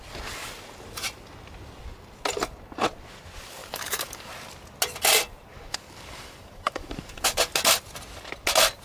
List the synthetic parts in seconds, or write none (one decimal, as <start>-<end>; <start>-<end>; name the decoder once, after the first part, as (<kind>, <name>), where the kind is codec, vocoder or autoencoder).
3.6-4.3 (codec, DAC); 5.5-7.5